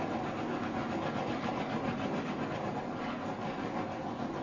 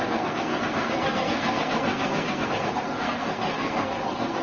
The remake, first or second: second